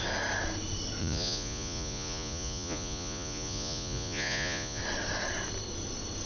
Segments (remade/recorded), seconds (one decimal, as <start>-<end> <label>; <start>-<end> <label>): 0.0-1.0 recorded; 1.0-4.8 remade; 4.8-6.3 recorded